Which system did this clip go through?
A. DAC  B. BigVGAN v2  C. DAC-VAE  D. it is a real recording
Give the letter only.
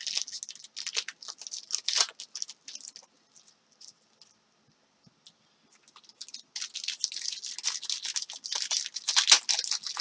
D